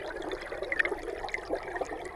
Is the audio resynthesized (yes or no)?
no